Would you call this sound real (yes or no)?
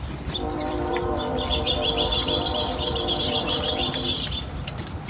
no